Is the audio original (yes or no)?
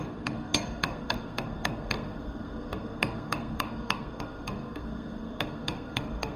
no